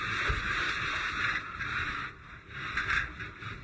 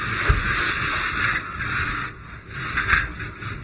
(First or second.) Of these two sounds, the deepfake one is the first